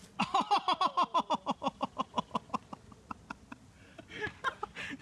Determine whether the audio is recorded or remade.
recorded